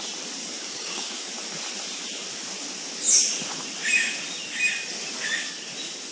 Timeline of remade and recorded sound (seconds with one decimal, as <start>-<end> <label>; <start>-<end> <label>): 0.0-0.4 recorded; 0.4-1.3 remade; 1.3-6.1 recorded